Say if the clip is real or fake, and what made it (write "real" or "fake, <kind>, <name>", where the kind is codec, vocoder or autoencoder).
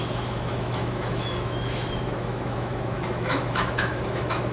fake, autoencoder, DAC-VAE